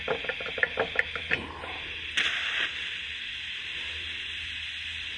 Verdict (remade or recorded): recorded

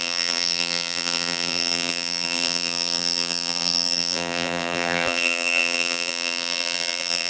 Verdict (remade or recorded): remade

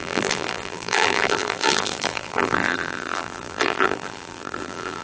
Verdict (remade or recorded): remade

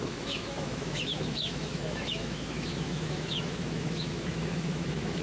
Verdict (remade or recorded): remade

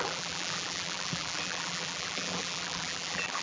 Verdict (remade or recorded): remade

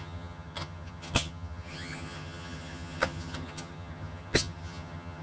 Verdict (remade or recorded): remade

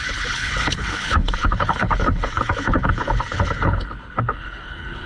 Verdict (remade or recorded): remade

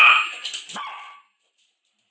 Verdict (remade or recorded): recorded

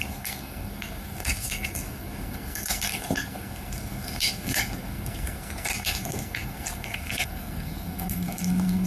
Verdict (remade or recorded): remade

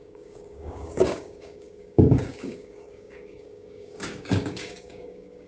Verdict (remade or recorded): remade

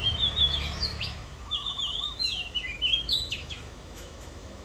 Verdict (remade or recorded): remade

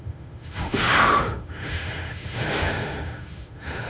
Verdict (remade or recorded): remade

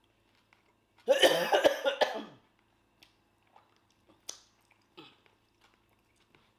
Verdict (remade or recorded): recorded